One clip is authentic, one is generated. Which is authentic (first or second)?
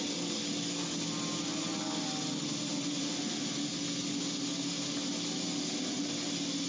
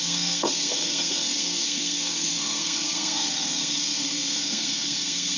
first